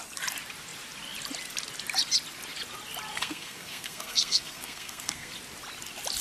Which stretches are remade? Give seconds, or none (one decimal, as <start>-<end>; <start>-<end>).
3.1-5.3